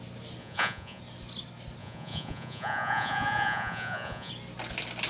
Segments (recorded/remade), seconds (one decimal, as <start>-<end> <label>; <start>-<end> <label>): 0.0-0.4 recorded; 0.4-1.0 remade; 1.0-1.8 recorded; 1.8-4.3 remade; 4.3-5.1 recorded